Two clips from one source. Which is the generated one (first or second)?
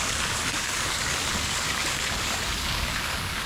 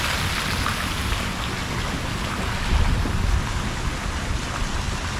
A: first